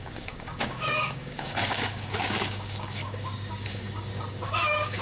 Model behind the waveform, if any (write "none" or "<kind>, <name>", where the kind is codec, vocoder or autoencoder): codec, DAC